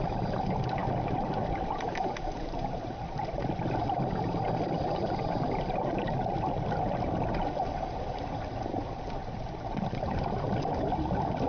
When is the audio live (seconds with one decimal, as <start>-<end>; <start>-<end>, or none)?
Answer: 0.0-11.5